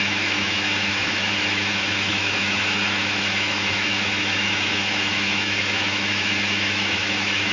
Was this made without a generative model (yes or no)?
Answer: no